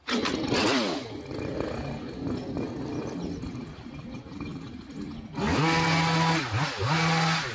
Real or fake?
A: real